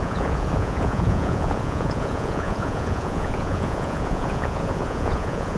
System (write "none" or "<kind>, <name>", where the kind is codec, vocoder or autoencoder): vocoder, Vocos